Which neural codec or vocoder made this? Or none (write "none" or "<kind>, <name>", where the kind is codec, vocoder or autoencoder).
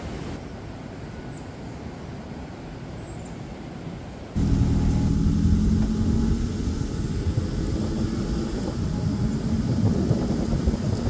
none